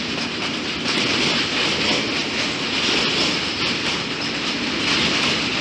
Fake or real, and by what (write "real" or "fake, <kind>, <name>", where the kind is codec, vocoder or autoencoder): real